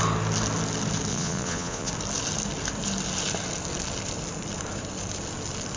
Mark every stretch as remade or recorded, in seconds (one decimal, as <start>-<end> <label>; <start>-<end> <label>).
0.0-1.1 recorded; 1.1-1.9 remade; 1.9-5.8 recorded